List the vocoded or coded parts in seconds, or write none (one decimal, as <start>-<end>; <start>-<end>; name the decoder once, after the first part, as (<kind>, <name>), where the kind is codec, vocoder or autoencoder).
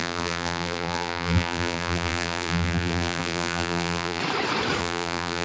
0.0-4.2 (vocoder, BigVGAN v2); 4.8-5.4